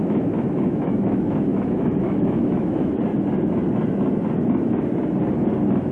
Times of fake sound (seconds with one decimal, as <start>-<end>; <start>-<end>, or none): 0.0-3.1